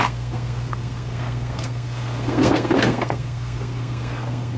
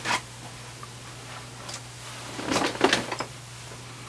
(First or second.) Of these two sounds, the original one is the second